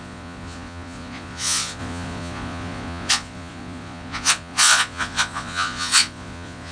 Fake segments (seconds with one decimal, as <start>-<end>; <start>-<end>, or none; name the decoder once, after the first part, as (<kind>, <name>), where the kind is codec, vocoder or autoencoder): 0.0-6.7 (vocoder, Vocos)